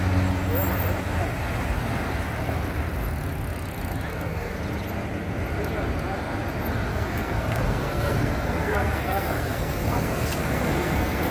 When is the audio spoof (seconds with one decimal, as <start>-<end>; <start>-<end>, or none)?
4.1-4.6; 6.9-11.3